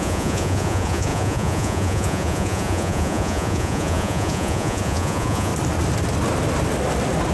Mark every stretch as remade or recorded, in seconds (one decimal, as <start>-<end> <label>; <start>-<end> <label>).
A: 0.0-5.5 remade; 5.5-7.3 recorded

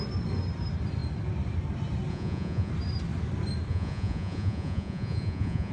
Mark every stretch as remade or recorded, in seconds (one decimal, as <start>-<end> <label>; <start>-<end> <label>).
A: 0.0-2.1 recorded; 2.1-2.7 remade; 2.7-3.7 recorded; 3.7-5.7 remade

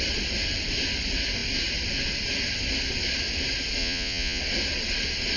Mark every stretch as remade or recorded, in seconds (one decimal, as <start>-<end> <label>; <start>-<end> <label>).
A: 0.0-3.8 recorded; 3.8-4.4 remade; 4.4-5.4 recorded

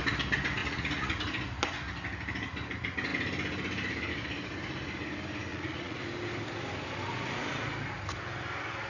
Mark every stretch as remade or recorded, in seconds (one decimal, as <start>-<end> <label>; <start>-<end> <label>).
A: 0.0-0.6 recorded; 0.6-1.2 remade; 1.2-5.5 recorded; 5.5-6.0 remade; 6.0-8.9 recorded

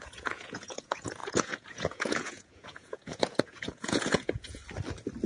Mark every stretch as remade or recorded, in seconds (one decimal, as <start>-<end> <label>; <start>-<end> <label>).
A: 0.0-4.6 remade; 4.6-5.3 recorded